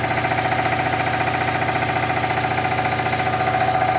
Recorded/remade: recorded